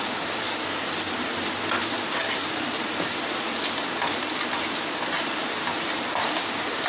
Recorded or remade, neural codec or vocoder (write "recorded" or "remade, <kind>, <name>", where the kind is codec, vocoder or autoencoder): recorded